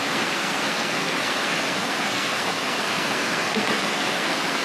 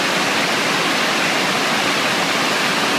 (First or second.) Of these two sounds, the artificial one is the first